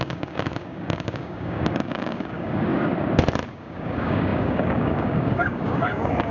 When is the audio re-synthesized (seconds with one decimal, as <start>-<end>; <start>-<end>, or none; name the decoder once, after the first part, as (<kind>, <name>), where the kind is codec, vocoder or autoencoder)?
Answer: 0.0-2.7 (codec, DAC); 3.5-6.3